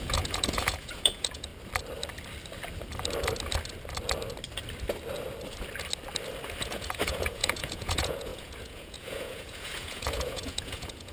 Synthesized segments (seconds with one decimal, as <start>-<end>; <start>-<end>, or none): 0.0-1.5; 6.6-11.1